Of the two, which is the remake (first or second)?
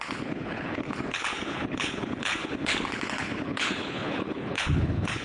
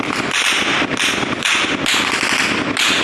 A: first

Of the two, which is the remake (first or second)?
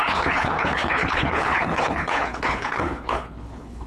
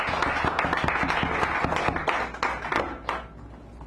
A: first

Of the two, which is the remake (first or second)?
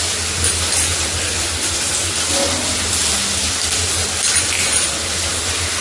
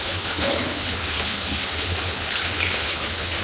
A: second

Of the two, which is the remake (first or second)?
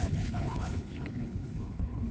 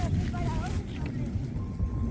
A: first